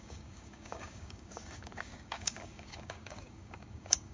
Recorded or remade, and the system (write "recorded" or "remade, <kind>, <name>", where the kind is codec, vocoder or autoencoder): remade, codec, DAC